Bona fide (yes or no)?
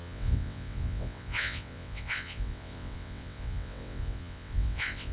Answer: no